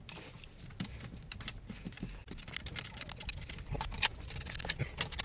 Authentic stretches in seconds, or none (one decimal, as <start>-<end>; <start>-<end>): 0.0-5.2